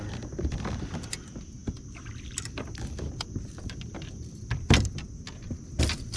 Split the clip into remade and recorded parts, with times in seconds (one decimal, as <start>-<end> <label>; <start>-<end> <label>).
0.0-6.2 recorded